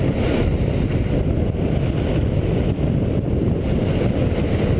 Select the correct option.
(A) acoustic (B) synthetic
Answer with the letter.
A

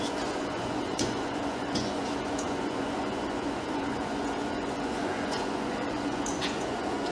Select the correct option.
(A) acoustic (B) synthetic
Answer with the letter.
B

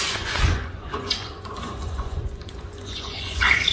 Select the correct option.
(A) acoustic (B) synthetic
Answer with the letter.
B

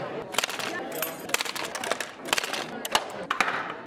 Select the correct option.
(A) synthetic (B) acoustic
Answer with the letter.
B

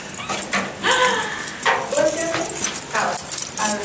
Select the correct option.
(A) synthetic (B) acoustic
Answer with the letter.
B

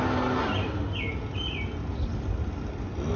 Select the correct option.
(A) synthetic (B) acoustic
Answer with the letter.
B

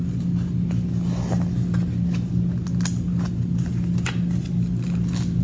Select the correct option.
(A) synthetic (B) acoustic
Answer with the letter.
B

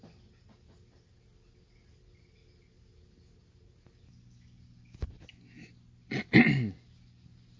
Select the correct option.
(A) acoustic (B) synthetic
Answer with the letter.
A